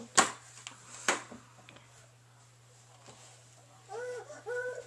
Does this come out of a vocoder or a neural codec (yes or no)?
no